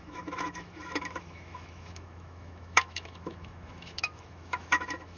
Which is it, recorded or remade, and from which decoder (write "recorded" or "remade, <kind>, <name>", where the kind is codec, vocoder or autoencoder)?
remade, autoencoder, DAC-VAE